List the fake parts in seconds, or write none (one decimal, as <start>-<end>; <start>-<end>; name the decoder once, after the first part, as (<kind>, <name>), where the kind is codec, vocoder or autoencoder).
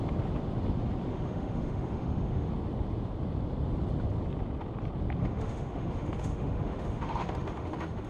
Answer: 1.1-2.5 (autoencoder, DAC-VAE); 5.2-8.1